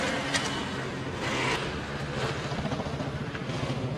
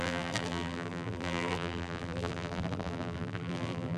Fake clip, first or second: second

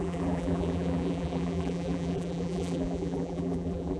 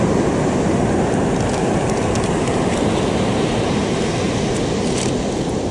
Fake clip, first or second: first